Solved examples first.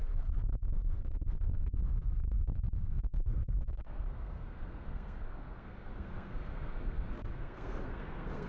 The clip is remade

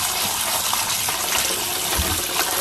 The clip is recorded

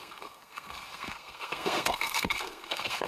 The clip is remade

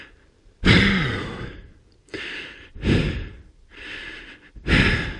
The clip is recorded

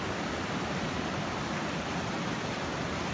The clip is recorded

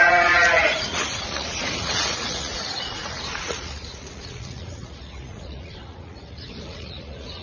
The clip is remade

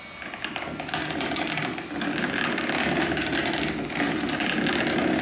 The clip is recorded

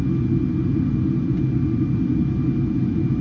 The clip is recorded